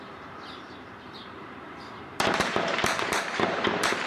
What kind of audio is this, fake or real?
fake